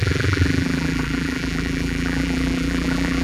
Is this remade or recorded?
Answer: remade